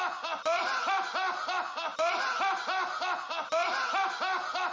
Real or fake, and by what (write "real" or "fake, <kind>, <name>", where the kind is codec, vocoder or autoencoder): real